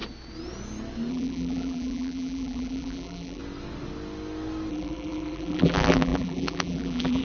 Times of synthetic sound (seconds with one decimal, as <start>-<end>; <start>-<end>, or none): 1.1-3.4; 4.7-7.2